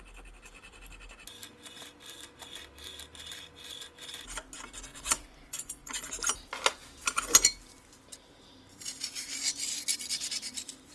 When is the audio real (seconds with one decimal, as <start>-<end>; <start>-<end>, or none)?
0.0-4.9; 6.1-10.9